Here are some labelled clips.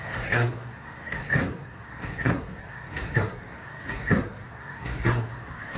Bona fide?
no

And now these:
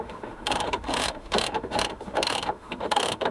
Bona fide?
no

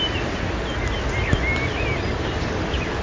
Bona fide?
yes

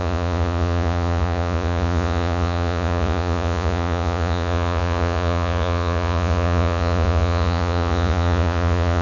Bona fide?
no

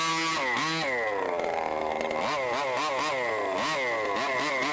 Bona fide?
yes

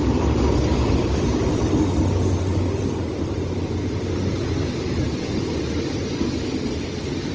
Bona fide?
yes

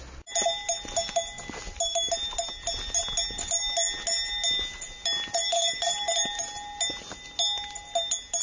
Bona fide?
yes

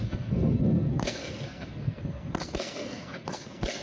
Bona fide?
no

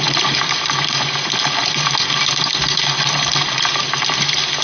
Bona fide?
yes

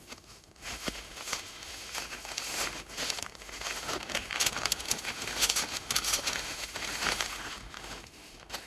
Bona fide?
no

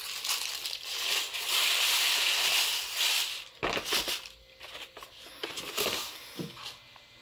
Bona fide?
yes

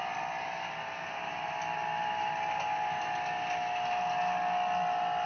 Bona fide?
yes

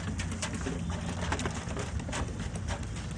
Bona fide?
yes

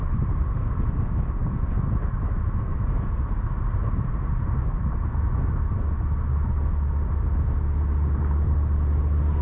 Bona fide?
yes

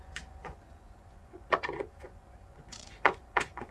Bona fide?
no